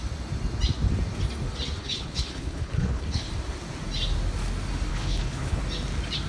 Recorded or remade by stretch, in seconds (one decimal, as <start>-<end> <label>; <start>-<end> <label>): 0.0-1.8 recorded; 1.8-3.3 remade; 3.3-4.9 recorded; 4.9-5.6 remade; 5.6-6.3 recorded